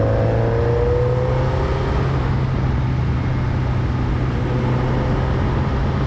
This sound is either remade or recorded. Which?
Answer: recorded